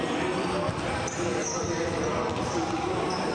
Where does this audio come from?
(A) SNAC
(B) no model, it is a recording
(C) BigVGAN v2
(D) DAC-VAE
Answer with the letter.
C